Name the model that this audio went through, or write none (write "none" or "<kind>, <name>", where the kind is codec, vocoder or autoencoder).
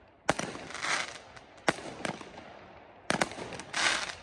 none